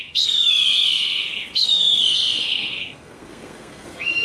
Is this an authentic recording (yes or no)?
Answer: no